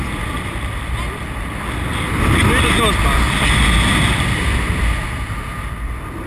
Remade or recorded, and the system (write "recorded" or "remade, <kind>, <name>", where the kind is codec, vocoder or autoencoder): recorded